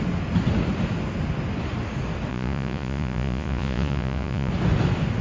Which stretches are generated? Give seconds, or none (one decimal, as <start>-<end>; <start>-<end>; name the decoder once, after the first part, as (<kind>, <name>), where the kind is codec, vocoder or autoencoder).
2.3-4.5 (vocoder, Vocos)